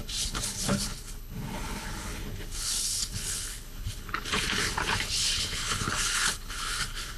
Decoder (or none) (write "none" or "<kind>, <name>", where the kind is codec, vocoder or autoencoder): codec, HILCodec